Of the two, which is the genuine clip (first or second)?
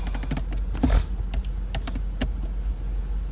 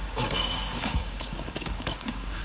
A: first